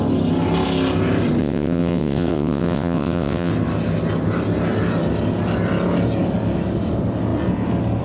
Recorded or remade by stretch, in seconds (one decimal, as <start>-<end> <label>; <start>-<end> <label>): 0.0-1.4 recorded; 1.4-3.5 remade; 3.5-8.0 recorded